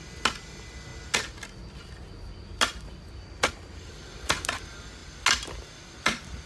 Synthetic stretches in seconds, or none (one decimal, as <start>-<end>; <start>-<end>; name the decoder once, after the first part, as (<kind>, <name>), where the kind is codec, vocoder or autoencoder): none